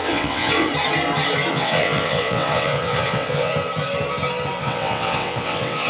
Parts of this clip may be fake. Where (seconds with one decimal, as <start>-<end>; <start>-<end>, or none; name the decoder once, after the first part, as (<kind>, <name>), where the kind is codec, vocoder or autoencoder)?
0.0-0.7 (vocoder, WaveNeXt); 1.5-3.5; 4.6-5.9